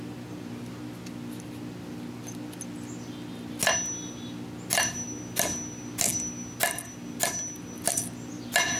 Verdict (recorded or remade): recorded